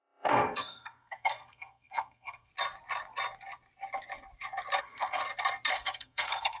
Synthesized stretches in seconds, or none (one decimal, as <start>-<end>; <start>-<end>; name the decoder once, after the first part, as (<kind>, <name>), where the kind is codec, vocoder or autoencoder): 0.0-2.5 (codec, SNAC); 4.8-5.2; 5.7-6.6